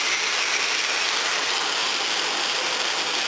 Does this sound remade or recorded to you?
recorded